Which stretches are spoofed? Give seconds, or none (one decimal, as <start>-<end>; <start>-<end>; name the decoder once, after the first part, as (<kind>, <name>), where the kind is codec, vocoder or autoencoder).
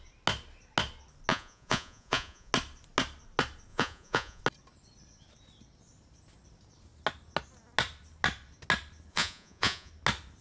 1.3-2.5 (vocoder, Vocos); 3.7-4.4; 9.1-9.9